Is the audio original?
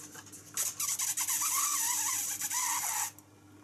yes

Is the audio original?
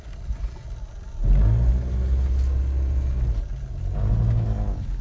yes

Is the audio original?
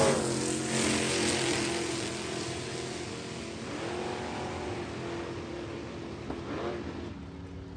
yes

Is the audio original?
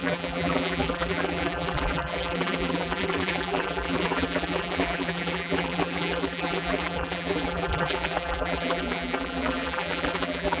no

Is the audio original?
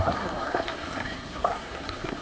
no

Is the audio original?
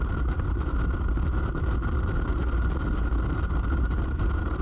no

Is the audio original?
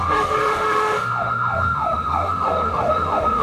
no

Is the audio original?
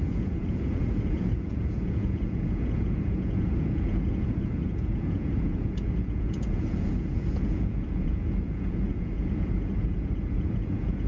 no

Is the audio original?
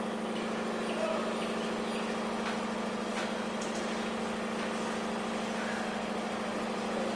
yes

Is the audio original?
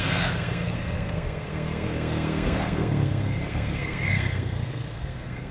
no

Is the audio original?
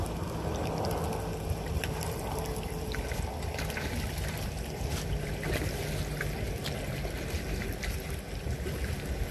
yes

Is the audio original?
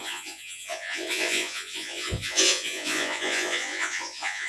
no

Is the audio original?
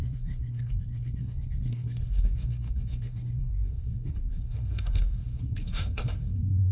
no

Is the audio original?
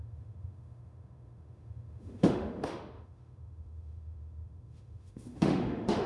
no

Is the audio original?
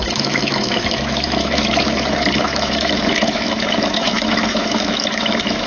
no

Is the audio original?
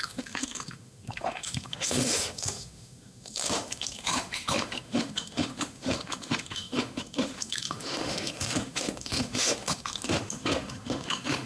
no